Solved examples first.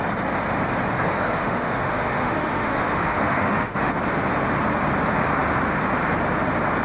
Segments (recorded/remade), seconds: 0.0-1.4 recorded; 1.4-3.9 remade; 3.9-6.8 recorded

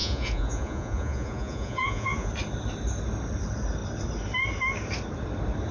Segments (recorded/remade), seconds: 0.0-2.3 remade; 2.3-5.7 recorded

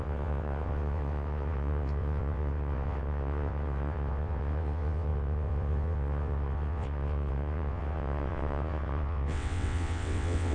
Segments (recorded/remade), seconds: 0.0-10.5 remade

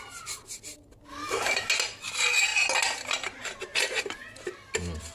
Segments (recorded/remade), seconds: 0.0-1.1 recorded; 1.1-1.7 remade; 1.7-5.1 recorded

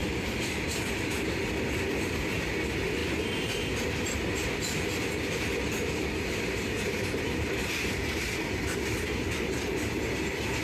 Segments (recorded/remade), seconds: 0.0-1.4 remade; 1.4-10.6 recorded

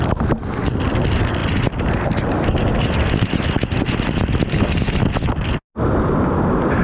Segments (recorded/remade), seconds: 0.0-6.8 recorded

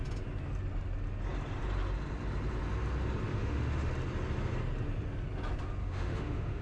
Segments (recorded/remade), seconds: 0.0-3.3 recorded; 3.3-3.9 remade; 3.9-5.8 recorded; 5.8-6.6 remade